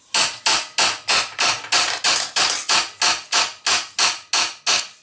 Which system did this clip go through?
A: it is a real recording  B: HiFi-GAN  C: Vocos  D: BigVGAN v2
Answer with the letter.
A